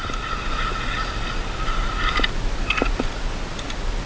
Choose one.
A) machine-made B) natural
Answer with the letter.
B